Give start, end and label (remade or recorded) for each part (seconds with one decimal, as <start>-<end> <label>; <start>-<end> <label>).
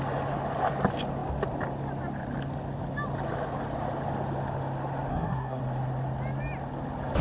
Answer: 0.0-5.1 recorded; 5.1-5.6 remade; 5.6-7.2 recorded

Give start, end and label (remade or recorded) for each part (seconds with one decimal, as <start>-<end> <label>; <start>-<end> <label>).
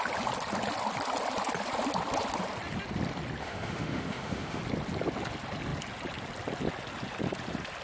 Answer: 0.0-3.4 recorded; 3.4-4.6 remade; 4.6-7.8 recorded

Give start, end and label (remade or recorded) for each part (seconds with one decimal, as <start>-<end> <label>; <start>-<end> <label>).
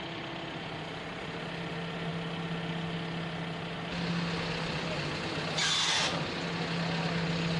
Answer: 0.0-7.6 recorded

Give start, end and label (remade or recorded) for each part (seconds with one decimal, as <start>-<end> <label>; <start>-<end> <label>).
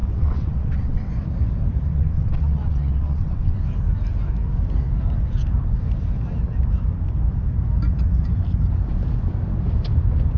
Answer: 0.0-1.1 remade; 1.1-1.9 recorded; 1.9-3.6 remade; 3.6-10.4 recorded